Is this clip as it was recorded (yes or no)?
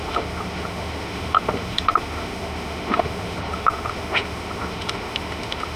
no